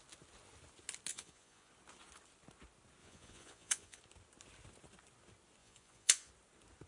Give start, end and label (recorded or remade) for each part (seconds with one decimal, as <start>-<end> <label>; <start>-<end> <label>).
0.0-1.1 recorded; 1.1-1.7 remade; 1.7-3.0 recorded; 3.0-4.0 remade; 4.0-5.6 recorded; 5.6-6.3 remade; 6.3-6.9 recorded